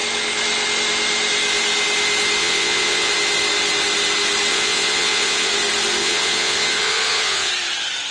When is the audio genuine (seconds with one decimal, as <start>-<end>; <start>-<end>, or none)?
0.0-2.4; 3.1-4.5; 5.5-6.0; 7.5-8.1